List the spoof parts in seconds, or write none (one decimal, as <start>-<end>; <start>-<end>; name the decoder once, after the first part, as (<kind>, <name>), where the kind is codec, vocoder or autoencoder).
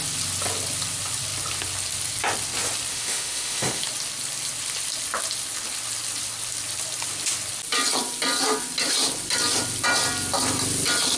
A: 2.9-3.8 (autoencoder, DAC-VAE)